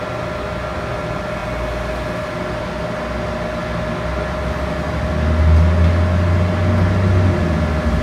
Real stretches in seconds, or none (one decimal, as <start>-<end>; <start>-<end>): 0.0-8.0

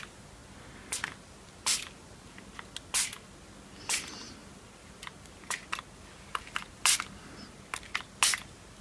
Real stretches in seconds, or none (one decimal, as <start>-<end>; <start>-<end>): 0.0-8.8